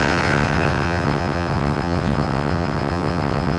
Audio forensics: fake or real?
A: fake